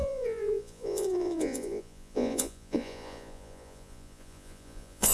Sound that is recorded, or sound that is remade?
remade